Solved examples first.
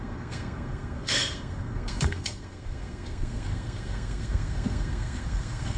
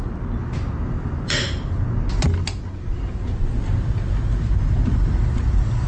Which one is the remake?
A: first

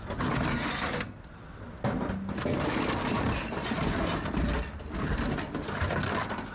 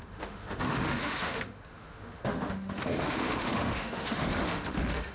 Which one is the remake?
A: second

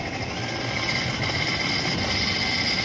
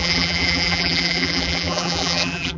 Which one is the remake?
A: second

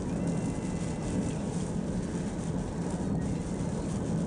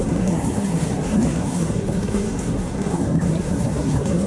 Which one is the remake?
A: second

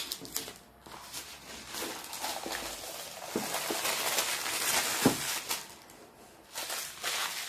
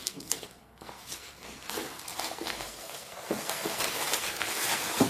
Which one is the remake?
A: second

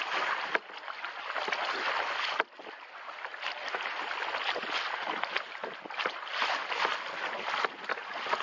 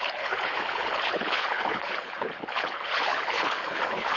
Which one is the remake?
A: second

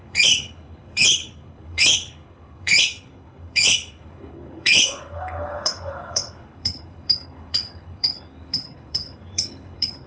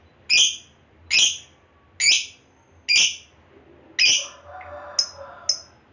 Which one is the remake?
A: first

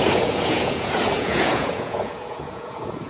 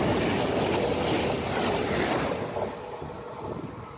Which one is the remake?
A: first